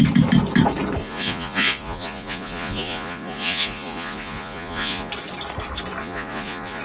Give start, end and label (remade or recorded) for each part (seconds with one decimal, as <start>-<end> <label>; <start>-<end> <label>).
0.0-1.0 recorded; 1.0-5.1 remade; 5.1-6.0 recorded; 6.0-6.8 remade